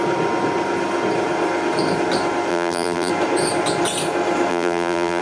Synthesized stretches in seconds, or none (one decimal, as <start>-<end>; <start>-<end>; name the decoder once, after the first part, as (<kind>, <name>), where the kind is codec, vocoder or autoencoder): 2.5-3.1 (vocoder, BigVGAN v2); 4.5-5.2